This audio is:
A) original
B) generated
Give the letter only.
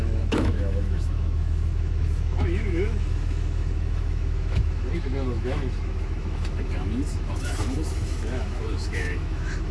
B